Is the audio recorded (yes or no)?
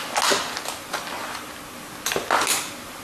yes